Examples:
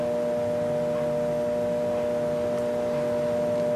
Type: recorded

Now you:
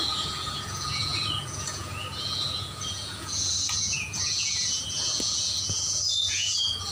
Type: remade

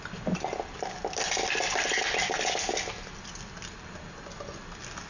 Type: recorded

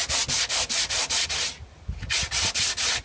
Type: recorded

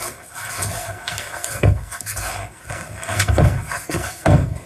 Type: remade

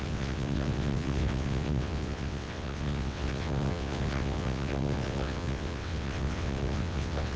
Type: remade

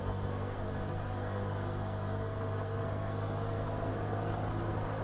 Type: remade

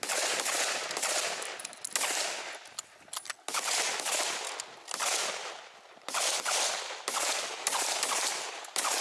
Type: recorded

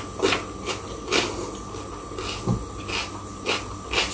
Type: recorded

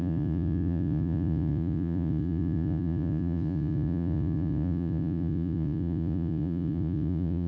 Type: remade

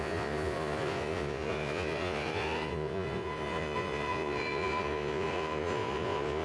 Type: remade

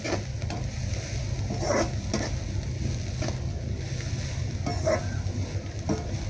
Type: recorded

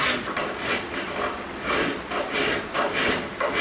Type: recorded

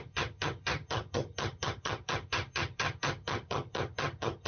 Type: remade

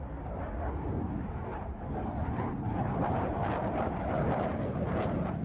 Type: recorded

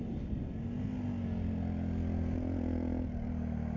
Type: recorded